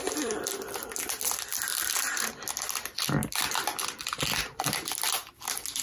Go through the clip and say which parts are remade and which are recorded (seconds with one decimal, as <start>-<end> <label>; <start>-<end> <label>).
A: 0.0-5.8 recorded